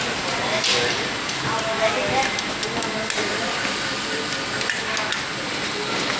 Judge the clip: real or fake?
real